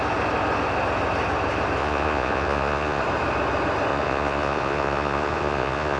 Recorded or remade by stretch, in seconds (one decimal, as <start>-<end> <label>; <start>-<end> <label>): 0.0-1.8 recorded; 1.8-3.0 remade; 3.0-3.9 recorded; 3.9-6.0 remade